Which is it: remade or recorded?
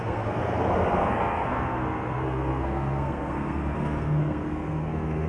remade